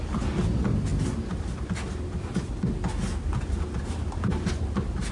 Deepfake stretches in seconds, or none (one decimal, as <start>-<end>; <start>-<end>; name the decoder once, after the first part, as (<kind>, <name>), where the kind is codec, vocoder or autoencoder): none